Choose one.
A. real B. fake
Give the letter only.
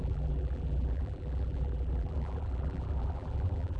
B